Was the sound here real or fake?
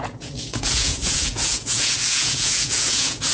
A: fake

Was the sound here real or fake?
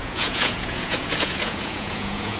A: fake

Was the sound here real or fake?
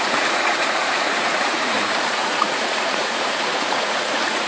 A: fake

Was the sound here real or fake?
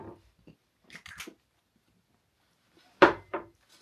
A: real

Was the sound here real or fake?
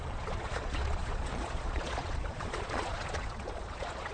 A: fake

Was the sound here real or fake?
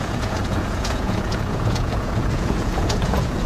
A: fake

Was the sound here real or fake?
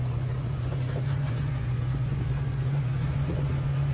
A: fake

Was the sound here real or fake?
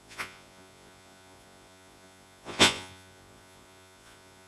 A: fake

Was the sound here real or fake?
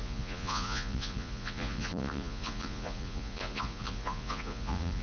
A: fake